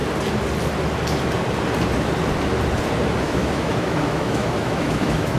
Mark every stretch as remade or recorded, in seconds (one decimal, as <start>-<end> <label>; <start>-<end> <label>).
0.0-3.2 recorded; 3.2-5.4 remade